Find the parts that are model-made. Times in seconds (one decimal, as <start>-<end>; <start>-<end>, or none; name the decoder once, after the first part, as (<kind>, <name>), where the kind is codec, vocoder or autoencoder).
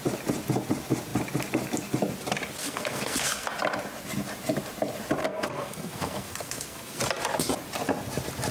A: 2.6-3.5 (codec, SNAC); 5.2-7.0